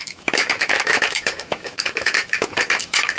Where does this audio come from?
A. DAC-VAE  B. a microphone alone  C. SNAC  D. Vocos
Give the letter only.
A